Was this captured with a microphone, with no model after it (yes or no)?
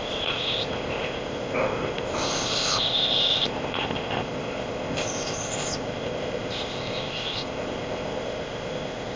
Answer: no